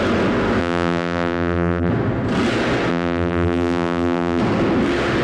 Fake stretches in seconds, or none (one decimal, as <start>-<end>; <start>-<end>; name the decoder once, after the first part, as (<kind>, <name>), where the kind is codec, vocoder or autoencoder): 0.6-1.9 (vocoder, BigVGAN v2); 2.9-4.4